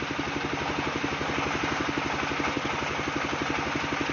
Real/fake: real